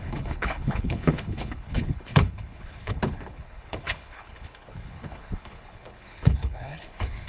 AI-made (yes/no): yes